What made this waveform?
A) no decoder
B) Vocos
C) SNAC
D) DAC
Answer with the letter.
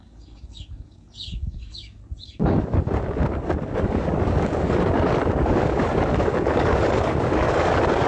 D